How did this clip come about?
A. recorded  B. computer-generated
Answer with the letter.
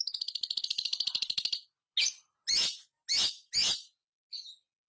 A